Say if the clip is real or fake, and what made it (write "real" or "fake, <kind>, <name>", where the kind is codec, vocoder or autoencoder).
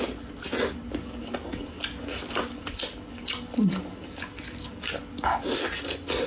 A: real